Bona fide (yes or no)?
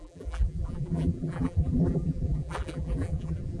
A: no